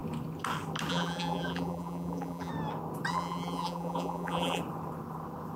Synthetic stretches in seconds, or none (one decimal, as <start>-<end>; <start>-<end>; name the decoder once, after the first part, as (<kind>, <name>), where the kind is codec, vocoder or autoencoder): 0.9-2.5 (vocoder, BigVGAN v2); 3.1-4.6

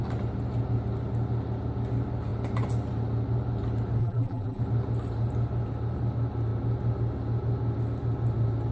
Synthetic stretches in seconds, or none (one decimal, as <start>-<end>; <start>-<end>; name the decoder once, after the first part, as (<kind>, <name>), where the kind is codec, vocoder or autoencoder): 4.0-4.6 (vocoder, BigVGAN v2)